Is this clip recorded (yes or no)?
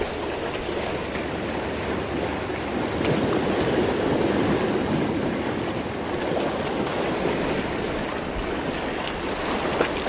yes